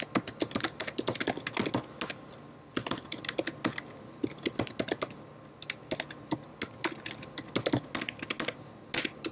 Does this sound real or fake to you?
real